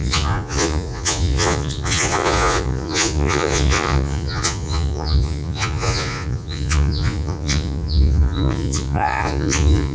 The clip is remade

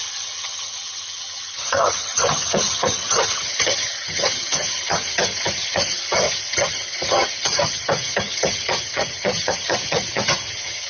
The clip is remade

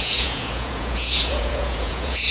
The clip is remade